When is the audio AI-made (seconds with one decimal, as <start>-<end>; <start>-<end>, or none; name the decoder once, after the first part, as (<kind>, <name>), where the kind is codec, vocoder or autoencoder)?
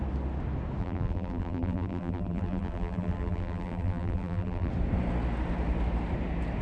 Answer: 0.8-4.7 (vocoder, BigVGAN v2)